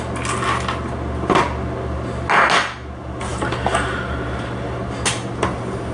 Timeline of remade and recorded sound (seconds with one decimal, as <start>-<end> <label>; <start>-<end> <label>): 0.0-5.9 recorded